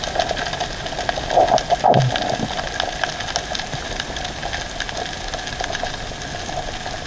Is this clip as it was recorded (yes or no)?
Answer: yes